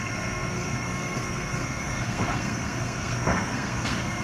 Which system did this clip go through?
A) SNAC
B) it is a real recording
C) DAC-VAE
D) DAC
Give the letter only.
A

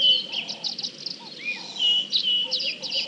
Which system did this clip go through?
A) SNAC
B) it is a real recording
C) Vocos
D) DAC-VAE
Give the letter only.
B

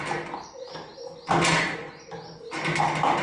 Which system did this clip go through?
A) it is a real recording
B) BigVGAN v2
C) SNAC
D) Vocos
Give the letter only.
A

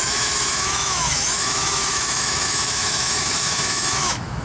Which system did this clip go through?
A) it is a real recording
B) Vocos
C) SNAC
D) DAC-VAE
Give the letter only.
D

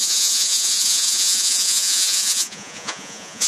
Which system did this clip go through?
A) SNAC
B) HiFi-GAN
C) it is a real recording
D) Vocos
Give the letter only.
D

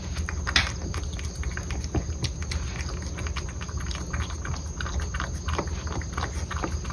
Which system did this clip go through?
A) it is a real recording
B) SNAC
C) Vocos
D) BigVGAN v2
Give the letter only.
A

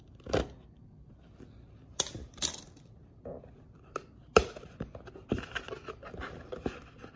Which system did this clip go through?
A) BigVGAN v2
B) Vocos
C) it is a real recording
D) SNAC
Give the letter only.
C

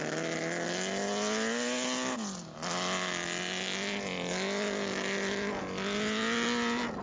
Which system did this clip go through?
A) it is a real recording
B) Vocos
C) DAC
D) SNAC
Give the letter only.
A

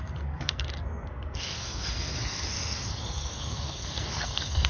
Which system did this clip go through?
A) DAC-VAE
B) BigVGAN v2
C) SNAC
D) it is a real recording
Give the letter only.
C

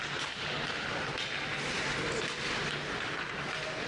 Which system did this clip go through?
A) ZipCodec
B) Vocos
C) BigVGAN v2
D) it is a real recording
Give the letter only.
D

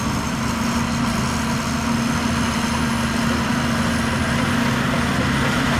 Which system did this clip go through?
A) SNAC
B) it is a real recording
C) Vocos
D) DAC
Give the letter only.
B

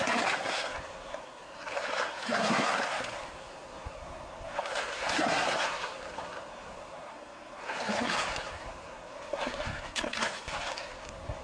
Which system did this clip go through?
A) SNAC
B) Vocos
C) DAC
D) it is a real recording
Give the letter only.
A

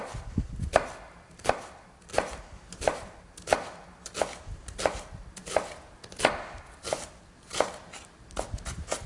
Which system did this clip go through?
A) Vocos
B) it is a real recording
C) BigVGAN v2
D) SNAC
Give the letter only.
C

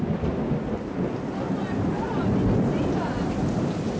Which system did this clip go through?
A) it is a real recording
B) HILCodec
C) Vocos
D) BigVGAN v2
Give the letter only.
A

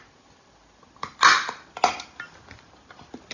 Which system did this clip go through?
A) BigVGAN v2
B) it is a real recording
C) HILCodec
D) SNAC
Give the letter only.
B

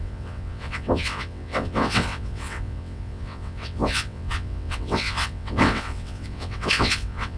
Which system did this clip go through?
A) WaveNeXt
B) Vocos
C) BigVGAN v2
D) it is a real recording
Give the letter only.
A